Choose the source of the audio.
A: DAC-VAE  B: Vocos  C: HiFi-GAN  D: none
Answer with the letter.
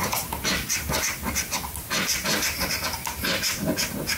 D